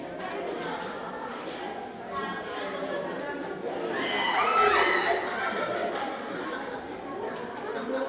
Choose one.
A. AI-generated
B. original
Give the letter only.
B